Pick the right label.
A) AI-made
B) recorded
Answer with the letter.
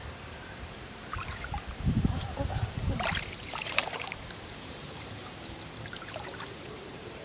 A